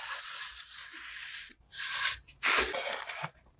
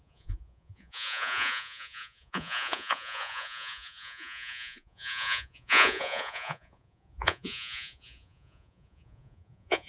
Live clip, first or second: first